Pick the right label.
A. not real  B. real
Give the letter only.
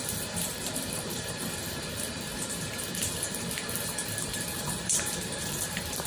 A